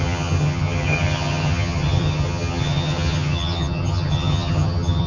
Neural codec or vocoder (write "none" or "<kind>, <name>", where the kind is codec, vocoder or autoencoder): vocoder, HiFi-GAN